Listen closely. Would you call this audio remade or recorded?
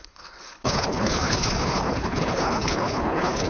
remade